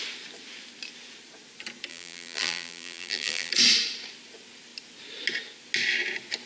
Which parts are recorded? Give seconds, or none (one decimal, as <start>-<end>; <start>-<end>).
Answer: 0.0-1.9; 3.5-6.5